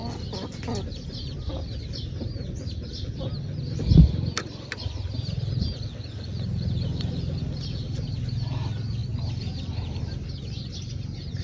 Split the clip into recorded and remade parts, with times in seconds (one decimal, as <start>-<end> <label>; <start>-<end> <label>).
0.0-11.4 recorded